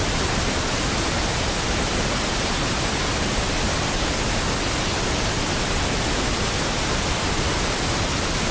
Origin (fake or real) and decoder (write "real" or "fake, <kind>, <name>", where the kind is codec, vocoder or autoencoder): real